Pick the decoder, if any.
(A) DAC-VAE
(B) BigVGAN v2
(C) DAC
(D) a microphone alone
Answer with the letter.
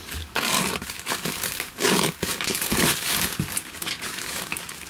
C